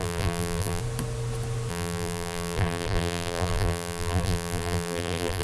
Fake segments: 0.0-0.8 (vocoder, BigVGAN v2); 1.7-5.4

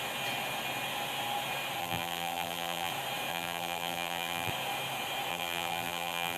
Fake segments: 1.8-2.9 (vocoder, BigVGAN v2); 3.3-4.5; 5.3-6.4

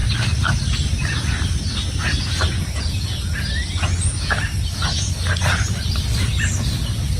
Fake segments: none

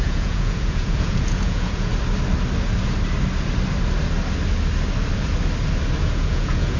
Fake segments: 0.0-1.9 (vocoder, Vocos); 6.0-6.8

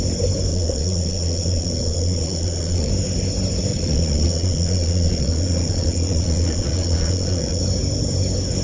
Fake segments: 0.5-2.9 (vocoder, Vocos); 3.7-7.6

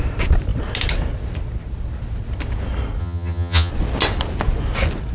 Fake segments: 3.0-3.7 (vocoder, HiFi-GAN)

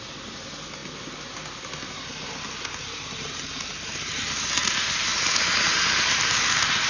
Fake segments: none